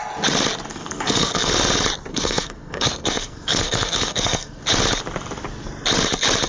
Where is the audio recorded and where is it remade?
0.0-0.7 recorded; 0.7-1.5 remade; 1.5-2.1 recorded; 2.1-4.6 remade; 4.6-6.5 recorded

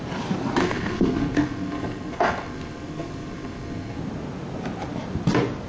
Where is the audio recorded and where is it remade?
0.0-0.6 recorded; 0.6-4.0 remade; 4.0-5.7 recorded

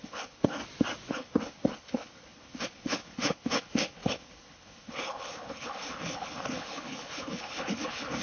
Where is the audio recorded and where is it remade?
0.0-0.6 remade; 0.6-1.1 recorded; 1.1-8.2 remade

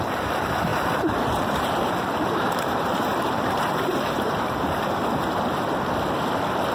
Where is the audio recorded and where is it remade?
0.0-5.0 remade; 5.0-6.7 recorded